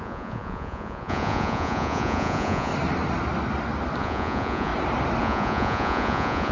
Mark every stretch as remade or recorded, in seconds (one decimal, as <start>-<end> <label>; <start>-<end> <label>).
0.0-2.7 remade; 2.7-4.0 recorded; 4.0-4.7 remade; 4.7-5.2 recorded; 5.2-6.5 remade